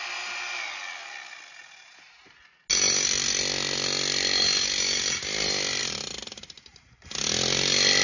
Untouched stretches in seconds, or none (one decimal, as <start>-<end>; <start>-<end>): 0.0-8.0